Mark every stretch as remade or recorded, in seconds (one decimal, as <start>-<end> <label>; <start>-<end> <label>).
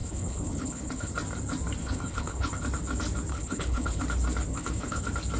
0.0-1.1 remade; 1.1-1.8 recorded; 1.8-2.6 remade; 2.6-3.3 recorded; 3.3-4.0 remade; 4.0-4.5 recorded; 4.5-5.0 remade; 5.0-5.4 recorded